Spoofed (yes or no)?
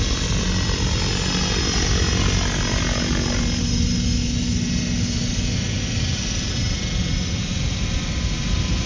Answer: no